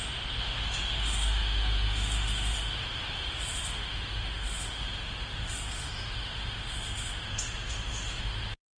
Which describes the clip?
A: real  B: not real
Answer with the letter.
B